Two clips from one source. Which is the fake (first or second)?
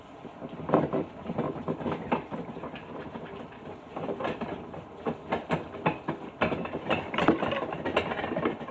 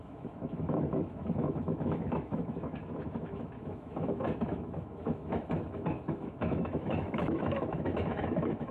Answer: second